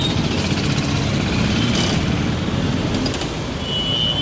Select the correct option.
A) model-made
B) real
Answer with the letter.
B